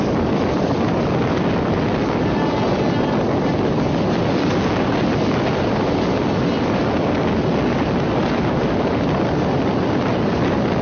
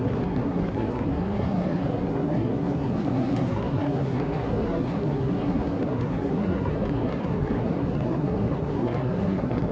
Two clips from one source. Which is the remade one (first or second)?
second